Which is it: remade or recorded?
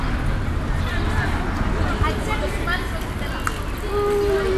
recorded